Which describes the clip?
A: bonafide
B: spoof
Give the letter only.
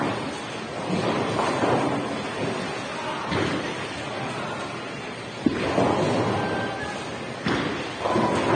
A